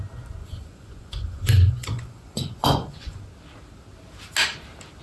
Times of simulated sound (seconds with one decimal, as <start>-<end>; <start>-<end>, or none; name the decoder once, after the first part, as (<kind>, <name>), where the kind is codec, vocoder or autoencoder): 0.4-3.2 (vocoder, Vocos)

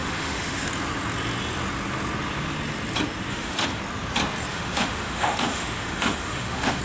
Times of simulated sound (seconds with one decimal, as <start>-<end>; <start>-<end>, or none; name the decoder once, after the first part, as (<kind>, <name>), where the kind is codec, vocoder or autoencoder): 0.0-0.7 (autoencoder, DAC-VAE); 3.3-3.8; 4.5-6.8

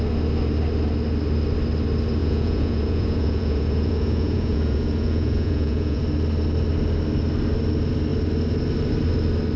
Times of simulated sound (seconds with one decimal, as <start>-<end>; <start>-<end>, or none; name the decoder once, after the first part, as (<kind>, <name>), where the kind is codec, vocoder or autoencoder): 2.2-6.0 (vocoder, Vocos)

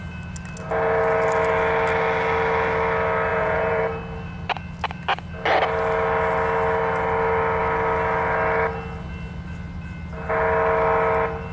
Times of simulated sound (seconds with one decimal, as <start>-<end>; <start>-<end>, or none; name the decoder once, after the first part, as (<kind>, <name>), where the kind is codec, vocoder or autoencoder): 3.3-3.8 (vocoder, Vocos)

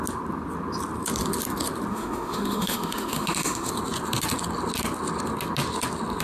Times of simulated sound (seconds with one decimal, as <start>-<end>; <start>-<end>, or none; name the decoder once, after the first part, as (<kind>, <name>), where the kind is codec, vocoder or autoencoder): 1.9-3.7 (autoencoder, DAC-VAE)

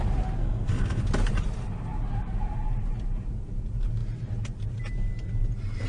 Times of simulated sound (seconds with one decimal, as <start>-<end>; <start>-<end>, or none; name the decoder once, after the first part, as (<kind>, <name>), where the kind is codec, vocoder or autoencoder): 0.4-1.0 (codec, SNAC)

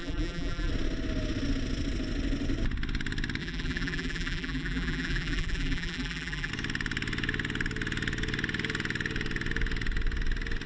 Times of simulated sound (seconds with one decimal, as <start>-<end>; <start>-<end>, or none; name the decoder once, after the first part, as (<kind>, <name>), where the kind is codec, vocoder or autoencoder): 0.0-0.7 (vocoder, BigVGAN v2); 3.4-6.5

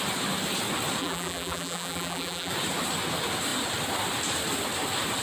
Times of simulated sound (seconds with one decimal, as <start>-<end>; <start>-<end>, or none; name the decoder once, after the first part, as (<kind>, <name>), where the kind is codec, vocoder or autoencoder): 1.0-2.5 (vocoder, BigVGAN v2)